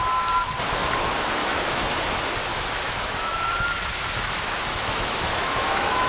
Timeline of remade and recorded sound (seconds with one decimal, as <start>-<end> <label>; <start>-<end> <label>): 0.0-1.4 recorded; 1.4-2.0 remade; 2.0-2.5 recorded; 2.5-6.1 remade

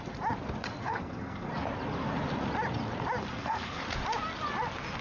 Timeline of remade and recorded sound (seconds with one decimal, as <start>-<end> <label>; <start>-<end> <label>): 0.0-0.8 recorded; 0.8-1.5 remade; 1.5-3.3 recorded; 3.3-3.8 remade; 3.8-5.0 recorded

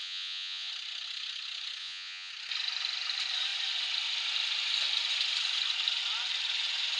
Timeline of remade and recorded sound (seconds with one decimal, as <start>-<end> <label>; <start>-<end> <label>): 0.0-0.7 remade; 0.7-1.8 recorded; 1.8-2.3 remade; 2.3-7.0 recorded

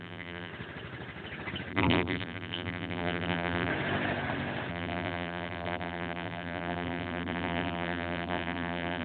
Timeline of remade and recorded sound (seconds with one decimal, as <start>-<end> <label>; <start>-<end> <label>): 0.0-0.5 remade; 0.5-1.7 recorded; 1.7-3.7 remade; 3.7-4.7 recorded; 4.7-9.0 remade

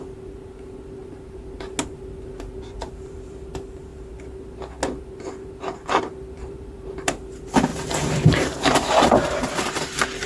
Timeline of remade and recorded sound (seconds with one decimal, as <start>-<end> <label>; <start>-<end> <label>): 0.0-1.0 remade; 1.0-2.5 recorded; 2.5-3.9 remade; 3.9-5.3 recorded; 5.3-7.7 remade; 7.7-9.4 recorded; 9.4-10.3 remade

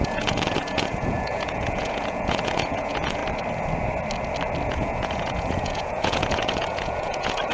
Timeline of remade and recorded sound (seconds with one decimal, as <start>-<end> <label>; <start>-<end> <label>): 0.0-3.2 remade; 3.2-4.7 recorded; 4.7-7.5 remade